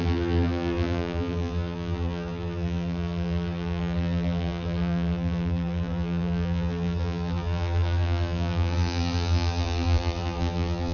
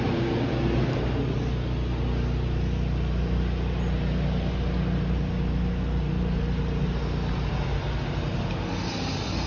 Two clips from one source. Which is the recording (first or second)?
second